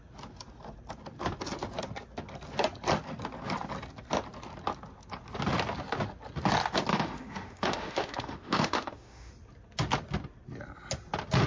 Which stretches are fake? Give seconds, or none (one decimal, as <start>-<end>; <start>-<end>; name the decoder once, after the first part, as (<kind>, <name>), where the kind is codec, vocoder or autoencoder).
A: 6.9-9.3 (autoencoder, DAC-VAE)